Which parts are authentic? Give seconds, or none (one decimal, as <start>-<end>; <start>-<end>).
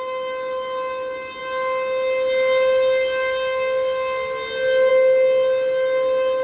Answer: 0.0-6.4